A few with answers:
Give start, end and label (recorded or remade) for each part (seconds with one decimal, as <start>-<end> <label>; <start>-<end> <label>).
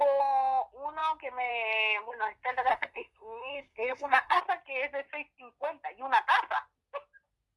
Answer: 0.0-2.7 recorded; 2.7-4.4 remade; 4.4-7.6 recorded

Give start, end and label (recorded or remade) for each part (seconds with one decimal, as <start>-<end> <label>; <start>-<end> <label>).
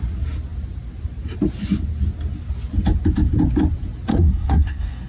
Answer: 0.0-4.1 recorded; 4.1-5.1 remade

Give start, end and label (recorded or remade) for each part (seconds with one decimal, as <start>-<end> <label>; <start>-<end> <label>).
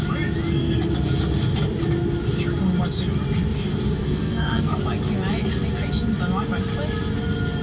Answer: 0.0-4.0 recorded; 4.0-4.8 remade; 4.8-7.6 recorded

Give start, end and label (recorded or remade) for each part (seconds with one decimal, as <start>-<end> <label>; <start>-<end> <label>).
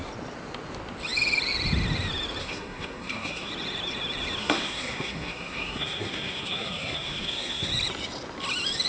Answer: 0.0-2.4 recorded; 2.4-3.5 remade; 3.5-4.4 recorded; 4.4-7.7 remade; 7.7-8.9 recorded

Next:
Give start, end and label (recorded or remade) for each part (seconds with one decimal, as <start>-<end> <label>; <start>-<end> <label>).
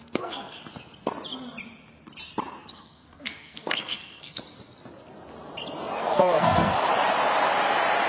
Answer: 0.0-0.6 remade; 0.6-2.6 recorded; 2.6-4.4 remade; 4.4-6.0 recorded; 6.0-6.7 remade; 6.7-8.1 recorded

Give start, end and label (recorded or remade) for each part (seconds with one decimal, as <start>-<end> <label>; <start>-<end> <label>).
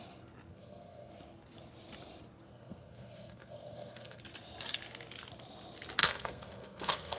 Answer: 0.0-0.5 recorded; 0.5-1.1 remade; 1.1-2.5 recorded; 2.5-4.2 remade; 4.2-6.0 recorded; 6.0-7.2 remade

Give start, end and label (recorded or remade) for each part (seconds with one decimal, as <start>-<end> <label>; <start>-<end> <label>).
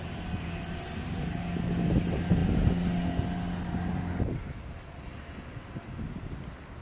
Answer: 0.0-6.8 recorded